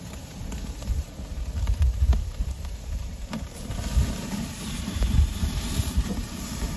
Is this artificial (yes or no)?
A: yes